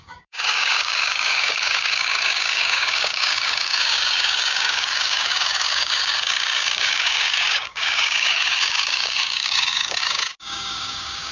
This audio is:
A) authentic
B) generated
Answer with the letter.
B